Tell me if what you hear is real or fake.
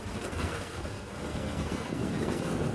fake